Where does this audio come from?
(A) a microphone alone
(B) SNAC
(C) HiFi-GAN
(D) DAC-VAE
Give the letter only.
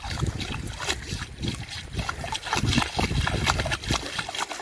A